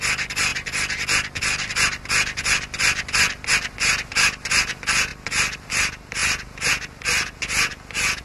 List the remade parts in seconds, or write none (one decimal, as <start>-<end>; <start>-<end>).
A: none